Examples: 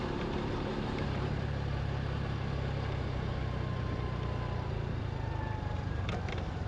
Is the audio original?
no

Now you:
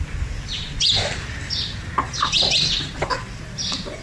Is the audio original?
yes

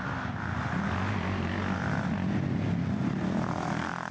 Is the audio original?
yes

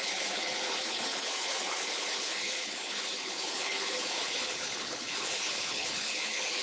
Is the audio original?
no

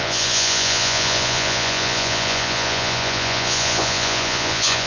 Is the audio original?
no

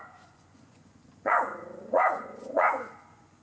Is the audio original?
no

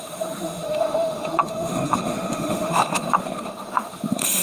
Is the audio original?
no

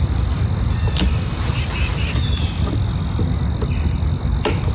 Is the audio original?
yes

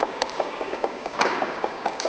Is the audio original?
no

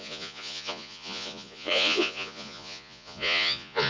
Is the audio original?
no